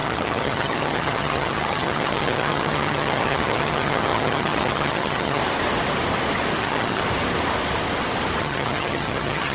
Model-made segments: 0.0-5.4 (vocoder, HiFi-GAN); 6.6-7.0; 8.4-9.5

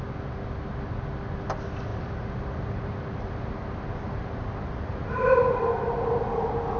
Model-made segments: 1.9-5.7 (vocoder, BigVGAN v2)

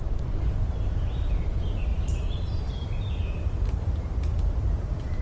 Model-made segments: 0.0-5.2 (vocoder, BigVGAN v2)

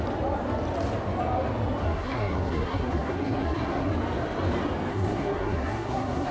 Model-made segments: 1.8-3.9 (codec, SNAC); 4.9-6.3